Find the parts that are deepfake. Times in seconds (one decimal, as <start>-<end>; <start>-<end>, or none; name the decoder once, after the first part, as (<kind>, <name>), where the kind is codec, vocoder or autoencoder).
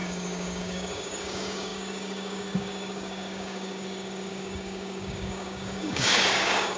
0.0-6.8 (codec, DAC)